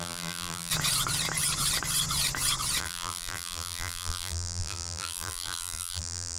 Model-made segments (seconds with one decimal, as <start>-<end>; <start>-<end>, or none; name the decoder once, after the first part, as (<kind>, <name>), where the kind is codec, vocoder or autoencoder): 0.0-0.7 (vocoder, BigVGAN v2); 2.8-6.4